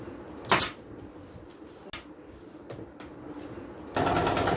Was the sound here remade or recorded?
recorded